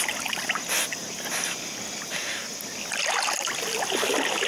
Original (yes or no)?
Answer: yes